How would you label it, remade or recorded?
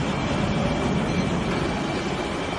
recorded